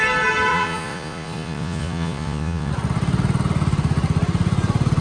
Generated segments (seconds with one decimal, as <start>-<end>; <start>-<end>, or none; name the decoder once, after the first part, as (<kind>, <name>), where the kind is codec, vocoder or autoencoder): 0.5-2.7 (vocoder, Vocos)